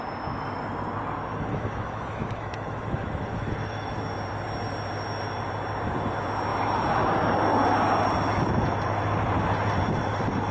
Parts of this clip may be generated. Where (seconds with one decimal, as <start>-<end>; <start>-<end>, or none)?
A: 1.5-4.0